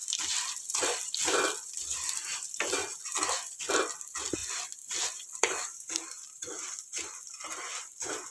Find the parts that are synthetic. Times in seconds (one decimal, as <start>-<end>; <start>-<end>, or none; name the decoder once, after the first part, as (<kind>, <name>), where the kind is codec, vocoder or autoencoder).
0.0-3.6 (vocoder, BigVGAN v2); 4.4-8.3